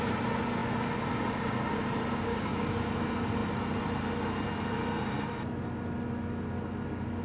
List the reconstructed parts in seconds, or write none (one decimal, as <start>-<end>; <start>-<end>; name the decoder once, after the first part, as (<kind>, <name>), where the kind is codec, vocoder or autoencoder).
2.3-2.9 (codec, DAC)